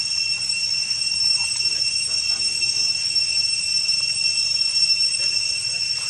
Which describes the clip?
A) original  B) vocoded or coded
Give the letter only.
A